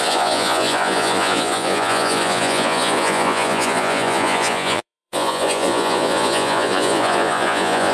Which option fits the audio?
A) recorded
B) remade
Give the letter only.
B